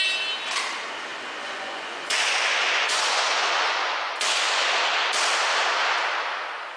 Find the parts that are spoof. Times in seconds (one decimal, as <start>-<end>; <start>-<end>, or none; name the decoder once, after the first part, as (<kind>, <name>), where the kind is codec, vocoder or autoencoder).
1.1-4.7 (vocoder, Vocos)